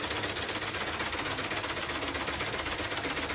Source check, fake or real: real